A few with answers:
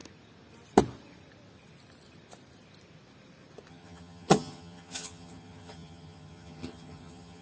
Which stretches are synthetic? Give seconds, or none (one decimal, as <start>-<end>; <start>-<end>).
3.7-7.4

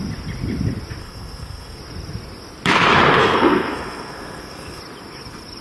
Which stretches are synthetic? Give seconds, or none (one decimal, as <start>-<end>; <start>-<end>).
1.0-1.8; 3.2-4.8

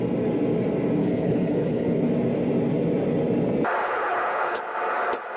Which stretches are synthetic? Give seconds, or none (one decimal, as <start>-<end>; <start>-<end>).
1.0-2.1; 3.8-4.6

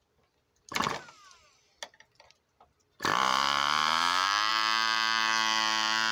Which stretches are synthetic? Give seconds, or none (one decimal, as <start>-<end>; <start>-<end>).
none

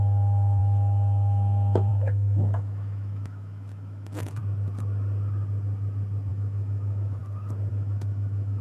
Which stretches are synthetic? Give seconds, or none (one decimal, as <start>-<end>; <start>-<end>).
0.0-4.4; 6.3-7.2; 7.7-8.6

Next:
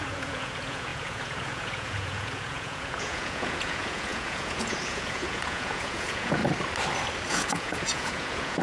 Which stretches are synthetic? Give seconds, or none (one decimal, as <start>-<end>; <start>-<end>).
0.0-6.4; 7.3-8.6

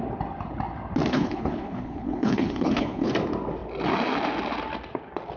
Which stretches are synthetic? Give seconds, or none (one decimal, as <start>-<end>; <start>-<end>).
1.1-3.1

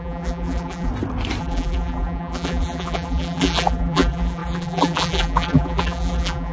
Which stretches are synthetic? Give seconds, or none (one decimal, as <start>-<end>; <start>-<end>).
0.0-0.9; 1.4-6.5